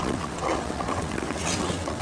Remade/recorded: remade